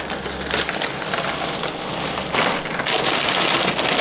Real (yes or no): yes